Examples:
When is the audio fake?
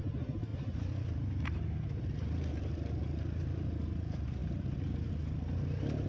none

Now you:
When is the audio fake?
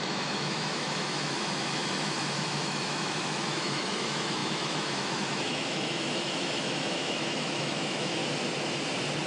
0.0-8.2 (autoencoder, DAC-VAE)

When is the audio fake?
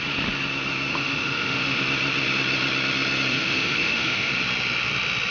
0.9-1.8 (autoencoder, DAC-VAE); 3.3-4.3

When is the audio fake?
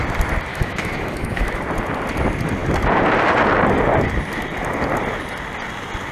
0.5-1.6 (autoencoder, DAC-VAE)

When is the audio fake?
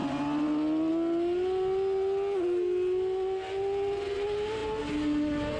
none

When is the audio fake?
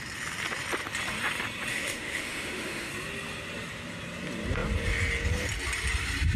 1.7-2.9 (autoencoder, DAC-VAE)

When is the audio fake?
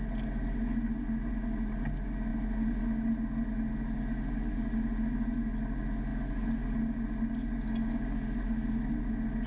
none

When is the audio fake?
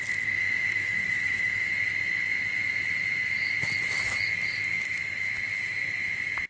0.4-1.7 (autoencoder, DAC-VAE); 4.7-5.3